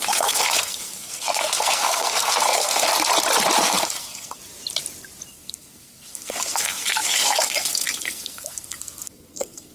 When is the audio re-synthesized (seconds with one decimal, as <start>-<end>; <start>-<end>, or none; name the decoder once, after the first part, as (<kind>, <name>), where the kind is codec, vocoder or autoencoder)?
0.0-2.9 (codec, SNAC); 3.6-4.4; 5.3-9.7